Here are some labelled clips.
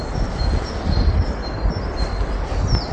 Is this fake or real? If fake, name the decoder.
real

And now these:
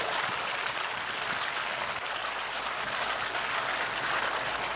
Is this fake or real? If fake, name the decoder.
real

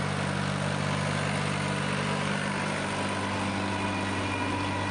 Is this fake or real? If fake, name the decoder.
real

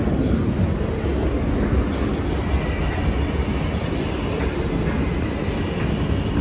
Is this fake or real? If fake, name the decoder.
real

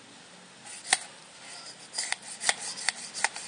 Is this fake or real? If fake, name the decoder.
real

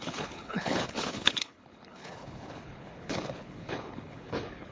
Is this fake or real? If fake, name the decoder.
fake, codec, HILCodec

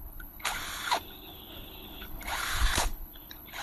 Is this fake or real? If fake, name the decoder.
fake, codec, HILCodec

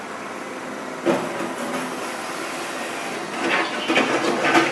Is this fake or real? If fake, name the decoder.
real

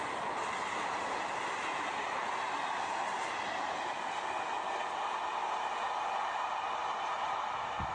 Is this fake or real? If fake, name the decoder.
real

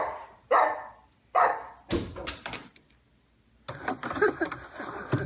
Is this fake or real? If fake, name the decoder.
real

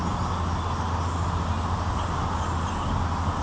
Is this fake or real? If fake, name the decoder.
real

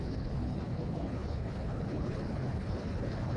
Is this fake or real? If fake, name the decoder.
fake, codec, HILCodec